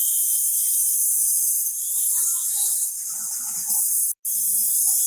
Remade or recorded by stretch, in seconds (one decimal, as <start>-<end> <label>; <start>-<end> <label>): 0.0-5.1 recorded